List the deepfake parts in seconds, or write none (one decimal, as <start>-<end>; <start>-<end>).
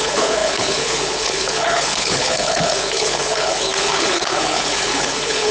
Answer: 0.0-5.5